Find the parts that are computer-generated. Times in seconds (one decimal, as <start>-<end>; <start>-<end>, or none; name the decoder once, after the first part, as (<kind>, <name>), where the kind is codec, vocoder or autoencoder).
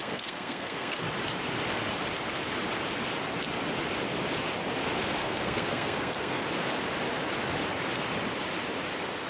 0.0-1.0 (codec, SNAC); 5.2-6.4